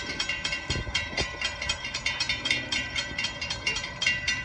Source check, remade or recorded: remade